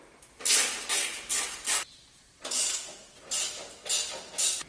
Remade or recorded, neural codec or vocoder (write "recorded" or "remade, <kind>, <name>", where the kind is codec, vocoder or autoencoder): recorded